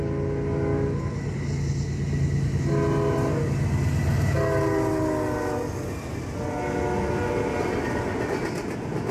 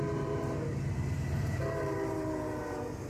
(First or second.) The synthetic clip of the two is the second